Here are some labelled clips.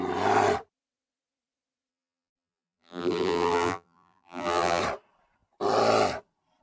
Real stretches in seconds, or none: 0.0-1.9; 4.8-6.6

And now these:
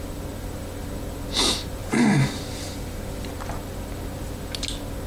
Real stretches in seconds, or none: 0.0-1.8; 3.3-5.1

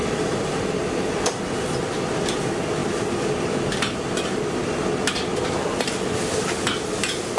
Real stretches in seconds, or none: 1.4-7.4

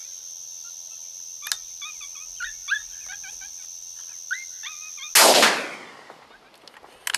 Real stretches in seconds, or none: 0.0-7.2

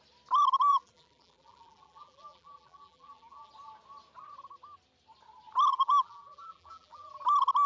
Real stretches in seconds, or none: 0.0-0.7; 3.5-5.7; 7.1-7.7

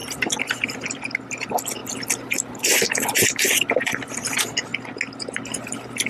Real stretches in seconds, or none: 4.7-5.6